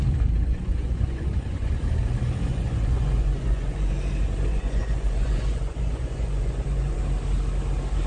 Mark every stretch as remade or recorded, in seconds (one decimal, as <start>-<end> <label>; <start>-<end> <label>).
0.0-0.5 recorded; 0.5-1.7 remade; 1.7-2.5 recorded; 2.5-3.9 remade; 3.9-4.5 recorded; 4.5-7.0 remade; 7.0-8.1 recorded